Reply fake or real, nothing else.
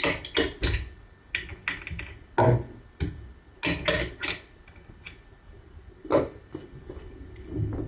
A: real